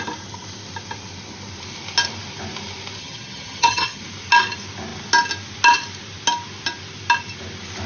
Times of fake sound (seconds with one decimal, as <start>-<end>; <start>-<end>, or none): 3.0-4.0